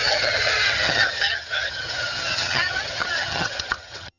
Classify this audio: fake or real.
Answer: fake